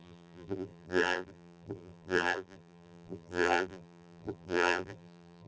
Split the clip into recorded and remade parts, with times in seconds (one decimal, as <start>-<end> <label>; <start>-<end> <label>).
0.0-5.5 remade